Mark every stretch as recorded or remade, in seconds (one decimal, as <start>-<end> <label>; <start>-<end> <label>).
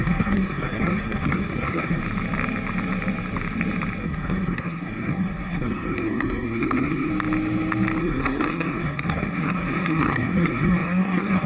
0.0-2.0 remade; 2.0-4.0 recorded; 4.0-7.1 remade; 7.1-8.0 recorded; 8.0-11.5 remade